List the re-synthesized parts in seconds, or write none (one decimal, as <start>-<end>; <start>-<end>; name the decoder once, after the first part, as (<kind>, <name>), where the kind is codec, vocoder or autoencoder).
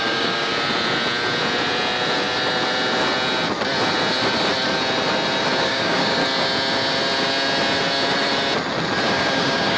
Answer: 0.0-0.5 (codec, DAC); 5.6-6.2; 9.1-9.8